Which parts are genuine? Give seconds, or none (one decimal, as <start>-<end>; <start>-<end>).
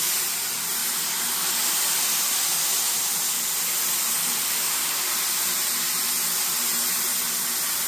0.8-5.4; 7.1-7.9